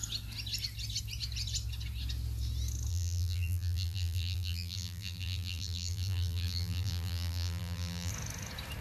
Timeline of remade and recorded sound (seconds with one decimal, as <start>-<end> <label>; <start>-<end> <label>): 0.0-2.9 recorded; 2.9-8.1 remade; 8.1-8.8 recorded